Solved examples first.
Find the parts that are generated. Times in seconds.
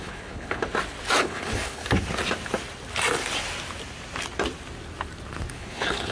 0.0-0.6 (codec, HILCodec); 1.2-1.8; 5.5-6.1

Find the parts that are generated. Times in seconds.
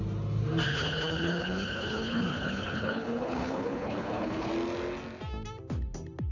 0.7-4.5 (codec, HILCodec)